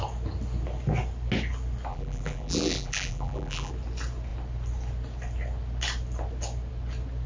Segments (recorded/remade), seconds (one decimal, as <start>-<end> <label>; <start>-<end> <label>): 0.0-1.9 recorded; 1.9-3.7 remade; 3.7-7.3 recorded